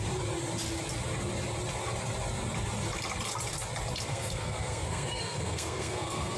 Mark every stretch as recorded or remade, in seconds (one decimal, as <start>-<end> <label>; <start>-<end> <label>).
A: 0.0-4.1 recorded; 4.1-6.4 remade

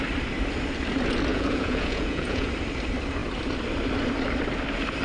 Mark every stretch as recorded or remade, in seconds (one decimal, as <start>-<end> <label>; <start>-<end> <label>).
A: 0.0-1.3 recorded; 1.3-2.5 remade; 2.5-5.0 recorded

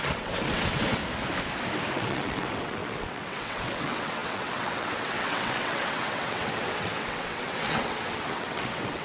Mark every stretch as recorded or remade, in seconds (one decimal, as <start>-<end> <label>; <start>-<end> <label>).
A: 0.0-1.0 remade; 1.0-1.9 recorded; 1.9-9.0 remade

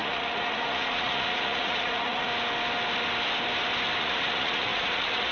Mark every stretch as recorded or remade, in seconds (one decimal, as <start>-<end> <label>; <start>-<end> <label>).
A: 0.0-2.3 remade; 2.3-4.0 recorded; 4.0-5.3 remade

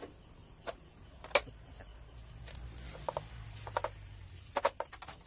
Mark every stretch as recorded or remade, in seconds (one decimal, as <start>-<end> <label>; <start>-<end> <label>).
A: 0.0-0.4 recorded; 0.4-1.2 remade; 1.2-5.3 recorded

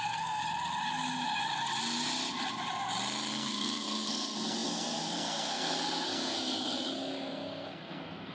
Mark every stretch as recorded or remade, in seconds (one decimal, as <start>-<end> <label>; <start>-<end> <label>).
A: 0.0-0.4 remade; 0.4-3.3 recorded; 3.3-8.3 remade

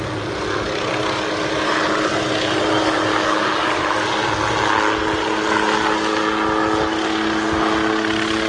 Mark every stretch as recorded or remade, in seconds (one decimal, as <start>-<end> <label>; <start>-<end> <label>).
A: 0.0-3.1 recorded; 3.1-3.8 remade; 3.8-8.5 recorded

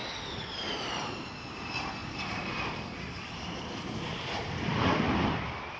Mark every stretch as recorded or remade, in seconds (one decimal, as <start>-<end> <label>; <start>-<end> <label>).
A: 0.0-5.8 recorded